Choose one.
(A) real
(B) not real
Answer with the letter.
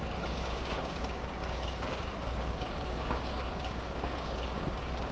B